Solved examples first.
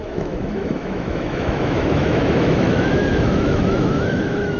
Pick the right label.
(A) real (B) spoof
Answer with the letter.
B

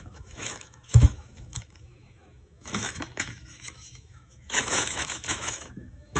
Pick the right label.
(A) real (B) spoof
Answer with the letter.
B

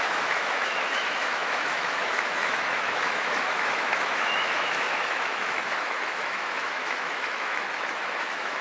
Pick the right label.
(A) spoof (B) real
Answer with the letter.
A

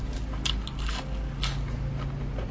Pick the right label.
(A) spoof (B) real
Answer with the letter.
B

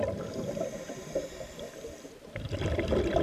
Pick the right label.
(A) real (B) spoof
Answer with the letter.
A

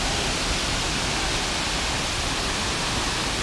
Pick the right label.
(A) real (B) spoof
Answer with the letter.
A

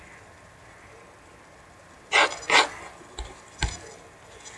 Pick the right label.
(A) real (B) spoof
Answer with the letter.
A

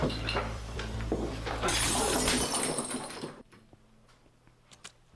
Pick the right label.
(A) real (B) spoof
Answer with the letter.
A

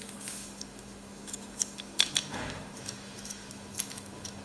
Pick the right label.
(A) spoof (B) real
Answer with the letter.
A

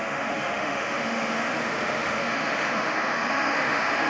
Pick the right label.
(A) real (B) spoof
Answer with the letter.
B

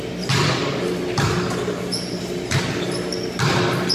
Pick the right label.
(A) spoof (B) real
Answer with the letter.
B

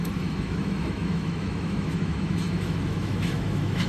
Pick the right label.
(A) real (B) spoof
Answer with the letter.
B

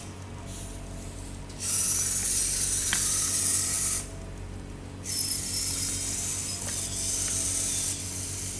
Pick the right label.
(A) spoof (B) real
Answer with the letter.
B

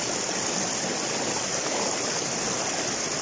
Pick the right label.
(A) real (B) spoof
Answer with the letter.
A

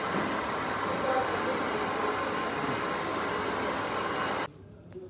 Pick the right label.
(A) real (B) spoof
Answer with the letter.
A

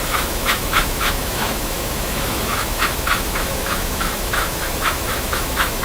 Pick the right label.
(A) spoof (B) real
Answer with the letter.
A